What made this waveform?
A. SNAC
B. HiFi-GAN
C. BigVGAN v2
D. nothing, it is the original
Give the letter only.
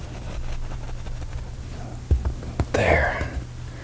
D